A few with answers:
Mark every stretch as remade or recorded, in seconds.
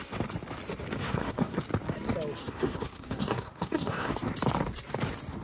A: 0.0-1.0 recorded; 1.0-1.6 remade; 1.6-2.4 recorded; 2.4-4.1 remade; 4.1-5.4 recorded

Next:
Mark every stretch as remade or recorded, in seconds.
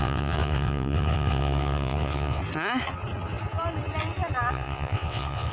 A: 0.0-2.4 remade; 2.4-4.5 recorded; 4.5-5.5 remade